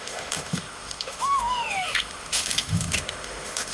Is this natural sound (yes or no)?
no